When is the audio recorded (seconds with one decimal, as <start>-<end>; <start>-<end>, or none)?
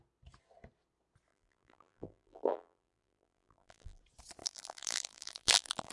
0.0-1.3; 4.0-4.4